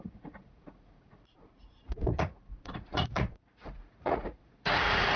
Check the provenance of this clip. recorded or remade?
remade